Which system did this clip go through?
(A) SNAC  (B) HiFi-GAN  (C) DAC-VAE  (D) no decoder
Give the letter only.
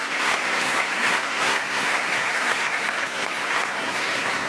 A